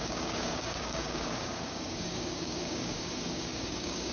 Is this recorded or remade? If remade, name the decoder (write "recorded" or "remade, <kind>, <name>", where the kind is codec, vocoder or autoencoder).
remade, codec, DAC